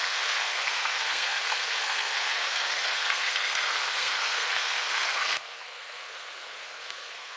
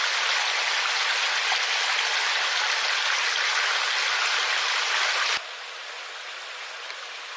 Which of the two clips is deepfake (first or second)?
first